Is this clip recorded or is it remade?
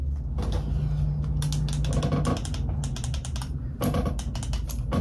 recorded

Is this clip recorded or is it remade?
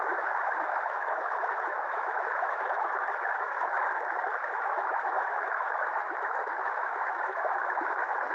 remade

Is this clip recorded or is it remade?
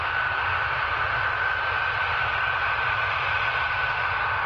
recorded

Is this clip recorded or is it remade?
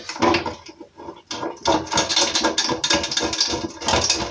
recorded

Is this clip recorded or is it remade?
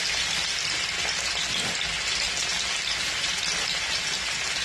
recorded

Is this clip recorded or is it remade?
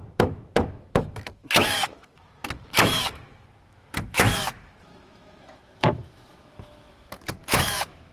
remade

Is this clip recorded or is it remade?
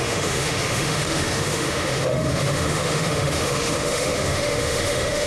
remade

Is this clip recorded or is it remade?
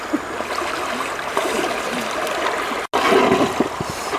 recorded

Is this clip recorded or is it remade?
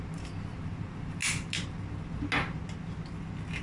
recorded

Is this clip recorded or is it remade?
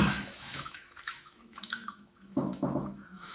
remade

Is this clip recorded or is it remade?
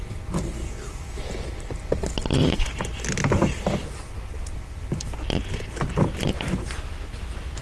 recorded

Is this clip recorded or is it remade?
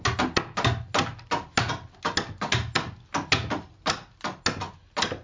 recorded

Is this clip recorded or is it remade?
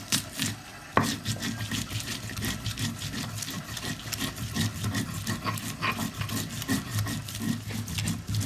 recorded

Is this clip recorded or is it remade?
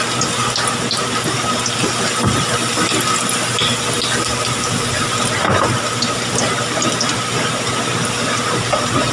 recorded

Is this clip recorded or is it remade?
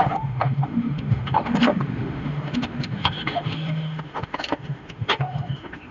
remade